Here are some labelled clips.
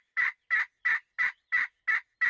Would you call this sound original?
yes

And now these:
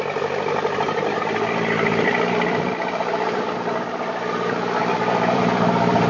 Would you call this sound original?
no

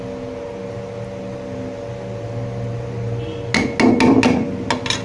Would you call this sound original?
yes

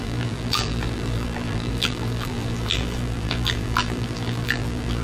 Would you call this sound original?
no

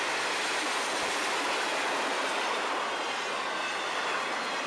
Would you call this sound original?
yes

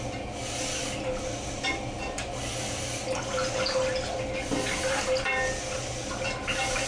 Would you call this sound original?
yes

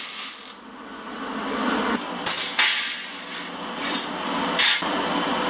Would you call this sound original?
no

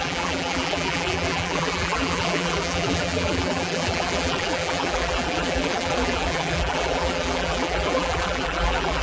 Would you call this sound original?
no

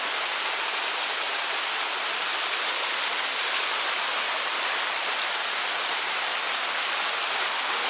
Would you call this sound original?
yes